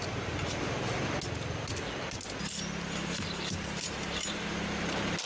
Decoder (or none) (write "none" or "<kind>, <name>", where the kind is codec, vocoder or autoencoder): none